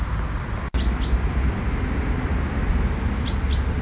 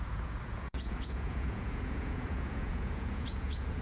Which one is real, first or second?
first